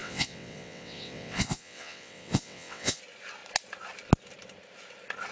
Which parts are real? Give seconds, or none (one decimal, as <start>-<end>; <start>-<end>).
3.0-5.3